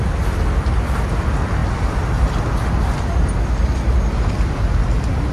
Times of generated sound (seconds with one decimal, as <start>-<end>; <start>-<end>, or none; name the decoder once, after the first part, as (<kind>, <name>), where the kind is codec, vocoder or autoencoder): none